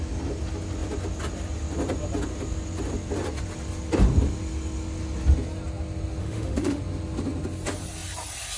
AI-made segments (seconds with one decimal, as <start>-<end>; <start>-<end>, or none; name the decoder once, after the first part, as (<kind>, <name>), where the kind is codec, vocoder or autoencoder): 6.2-6.8 (autoencoder, DAC-VAE)